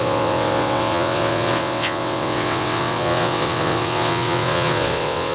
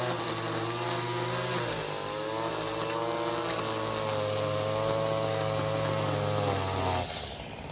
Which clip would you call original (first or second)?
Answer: second